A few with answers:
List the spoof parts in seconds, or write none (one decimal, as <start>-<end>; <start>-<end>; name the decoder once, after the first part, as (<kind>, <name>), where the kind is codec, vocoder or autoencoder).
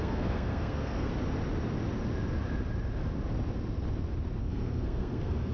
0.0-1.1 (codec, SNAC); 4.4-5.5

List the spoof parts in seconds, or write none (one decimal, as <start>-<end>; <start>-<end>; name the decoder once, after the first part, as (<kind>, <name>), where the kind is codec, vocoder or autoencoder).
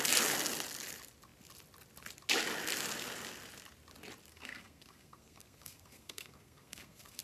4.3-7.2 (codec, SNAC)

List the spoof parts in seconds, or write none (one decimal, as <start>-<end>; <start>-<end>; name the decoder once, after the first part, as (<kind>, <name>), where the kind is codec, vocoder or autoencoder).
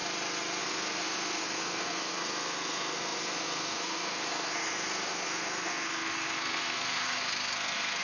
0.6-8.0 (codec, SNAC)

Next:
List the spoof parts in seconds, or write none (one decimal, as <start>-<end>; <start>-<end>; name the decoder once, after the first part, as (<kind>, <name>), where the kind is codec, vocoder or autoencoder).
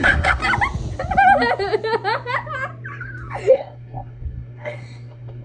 0.0-0.4 (codec, SNAC); 3.5-5.4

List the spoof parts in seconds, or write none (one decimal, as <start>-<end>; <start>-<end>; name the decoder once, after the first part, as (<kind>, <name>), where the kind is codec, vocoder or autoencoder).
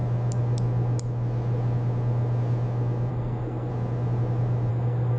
3.1-3.7 (codec, SNAC); 4.7-5.2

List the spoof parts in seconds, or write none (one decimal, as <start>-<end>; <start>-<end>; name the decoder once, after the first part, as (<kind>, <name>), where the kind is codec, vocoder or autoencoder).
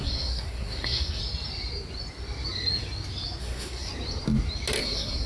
0.0-1.2 (codec, SNAC); 3.4-3.9; 4.8-5.3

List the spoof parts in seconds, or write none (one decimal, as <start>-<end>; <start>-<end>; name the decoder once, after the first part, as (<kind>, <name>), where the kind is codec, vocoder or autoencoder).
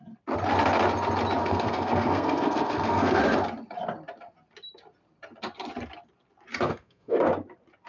1.4-3.2 (codec, SNAC); 6.7-7.2